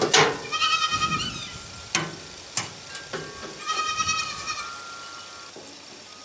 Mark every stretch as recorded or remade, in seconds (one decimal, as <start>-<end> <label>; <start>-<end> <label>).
0.0-6.2 recorded